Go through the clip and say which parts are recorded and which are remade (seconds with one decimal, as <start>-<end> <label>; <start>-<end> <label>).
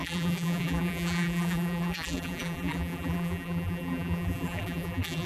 0.0-5.3 remade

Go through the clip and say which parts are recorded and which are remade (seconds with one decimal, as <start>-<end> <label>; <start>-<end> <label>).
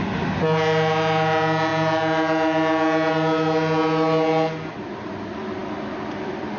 0.0-6.6 recorded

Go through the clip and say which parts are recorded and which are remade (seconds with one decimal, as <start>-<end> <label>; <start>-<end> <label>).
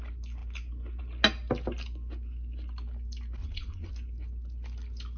0.0-3.4 recorded; 3.4-3.9 remade; 3.9-5.2 recorded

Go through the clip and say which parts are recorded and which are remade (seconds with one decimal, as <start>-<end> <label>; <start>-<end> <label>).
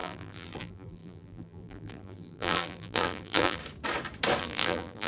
0.0-3.6 remade; 3.6-4.4 recorded; 4.4-5.1 remade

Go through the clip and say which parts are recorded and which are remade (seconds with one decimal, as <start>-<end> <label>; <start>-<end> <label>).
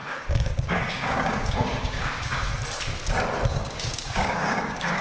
0.0-2.5 remade; 2.5-3.5 recorded; 3.5-5.0 remade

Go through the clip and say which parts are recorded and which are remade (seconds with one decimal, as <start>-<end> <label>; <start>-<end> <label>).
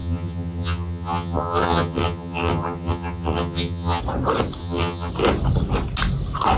0.0-4.0 remade; 4.0-4.6 recorded; 4.6-5.1 remade; 5.1-6.6 recorded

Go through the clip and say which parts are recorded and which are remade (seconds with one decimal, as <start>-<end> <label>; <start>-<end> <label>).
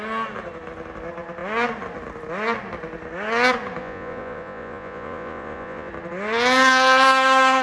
0.0-3.8 recorded; 3.8-5.9 remade; 5.9-7.6 recorded